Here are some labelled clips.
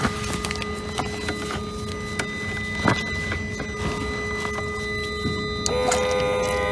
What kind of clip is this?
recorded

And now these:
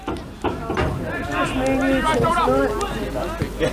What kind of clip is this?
recorded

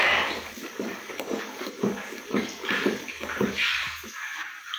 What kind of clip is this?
remade